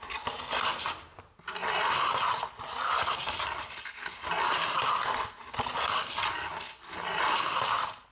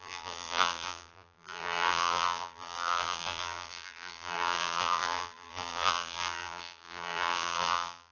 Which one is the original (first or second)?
first